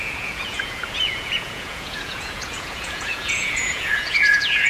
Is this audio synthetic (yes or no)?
yes